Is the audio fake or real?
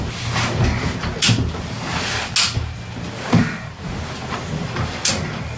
real